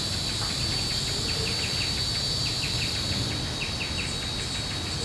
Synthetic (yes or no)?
no